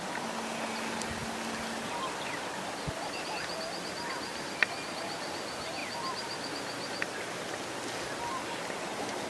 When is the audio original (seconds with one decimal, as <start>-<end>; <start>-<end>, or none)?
0.0-9.3